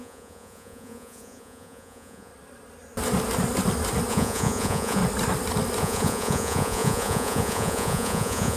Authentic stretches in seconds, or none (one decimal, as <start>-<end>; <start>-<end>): 2.3-4.1; 5.0-5.8